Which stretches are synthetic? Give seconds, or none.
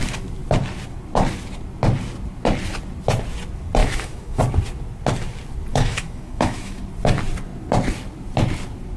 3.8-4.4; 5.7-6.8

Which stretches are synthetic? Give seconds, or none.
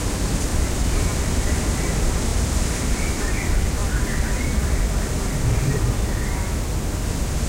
0.5-1.5; 3.8-5.8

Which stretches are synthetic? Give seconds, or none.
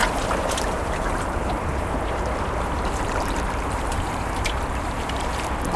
0.0-5.8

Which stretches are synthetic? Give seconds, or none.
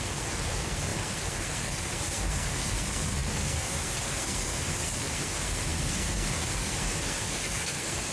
0.0-8.1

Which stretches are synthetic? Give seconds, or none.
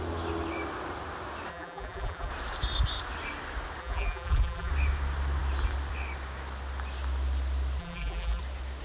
1.5-2.3; 3.8-4.7; 7.8-8.4